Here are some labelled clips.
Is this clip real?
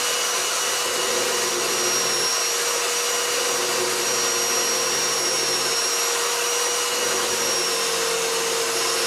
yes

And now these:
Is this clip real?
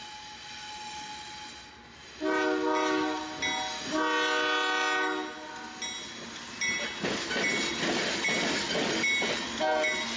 yes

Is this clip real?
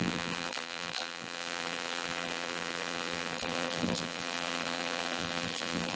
no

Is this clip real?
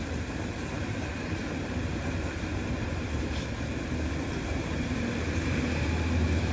no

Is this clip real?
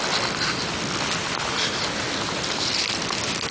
yes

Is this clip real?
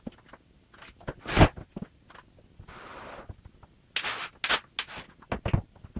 yes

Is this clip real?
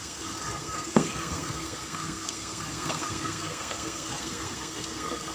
no